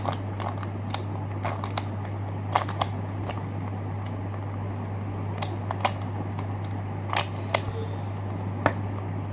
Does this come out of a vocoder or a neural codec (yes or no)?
no